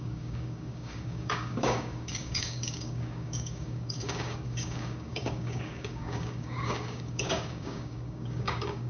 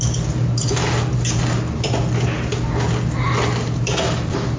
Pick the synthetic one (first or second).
first